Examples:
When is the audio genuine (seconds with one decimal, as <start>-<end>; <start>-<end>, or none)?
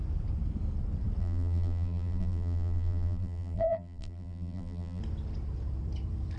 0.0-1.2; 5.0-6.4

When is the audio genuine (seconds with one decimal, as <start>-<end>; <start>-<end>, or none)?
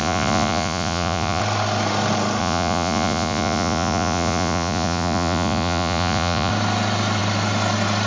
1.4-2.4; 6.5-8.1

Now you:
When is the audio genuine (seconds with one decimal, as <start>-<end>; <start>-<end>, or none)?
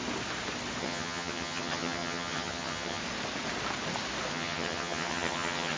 0.0-0.8; 3.0-4.3